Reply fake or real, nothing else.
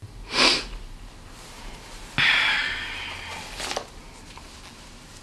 real